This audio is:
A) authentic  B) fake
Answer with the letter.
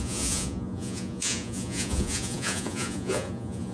B